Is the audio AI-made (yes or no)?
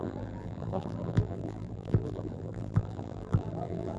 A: yes